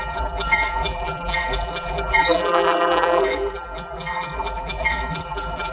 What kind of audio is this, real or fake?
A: fake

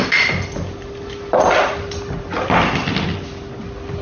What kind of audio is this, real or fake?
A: real